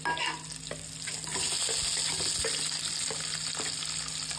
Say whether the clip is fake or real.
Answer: real